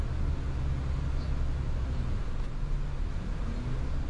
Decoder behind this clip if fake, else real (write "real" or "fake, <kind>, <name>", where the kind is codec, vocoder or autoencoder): real